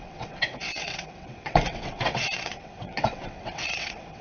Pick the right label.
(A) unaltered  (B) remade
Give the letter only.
B